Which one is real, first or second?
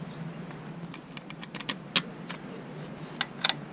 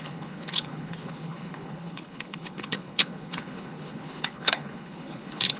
first